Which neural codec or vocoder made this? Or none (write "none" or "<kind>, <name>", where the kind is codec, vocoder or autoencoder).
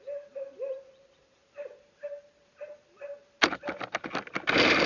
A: none